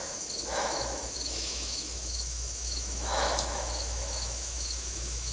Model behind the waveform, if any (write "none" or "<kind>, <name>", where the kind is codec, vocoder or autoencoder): autoencoder, DAC-VAE